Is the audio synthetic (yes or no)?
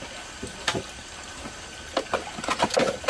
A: no